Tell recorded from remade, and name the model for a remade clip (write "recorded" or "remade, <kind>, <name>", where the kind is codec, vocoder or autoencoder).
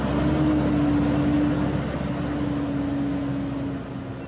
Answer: recorded